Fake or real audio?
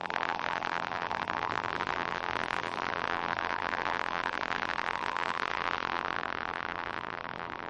fake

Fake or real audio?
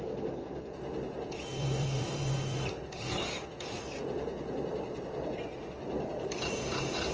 fake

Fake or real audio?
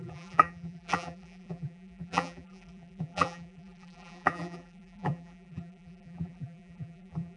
fake